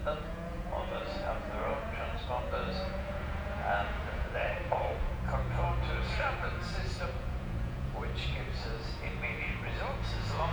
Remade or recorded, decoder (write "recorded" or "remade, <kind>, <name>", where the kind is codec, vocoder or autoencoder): remade, vocoder, Vocos